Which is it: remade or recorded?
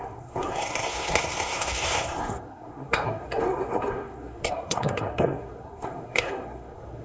remade